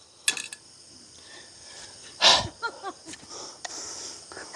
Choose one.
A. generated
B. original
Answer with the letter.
B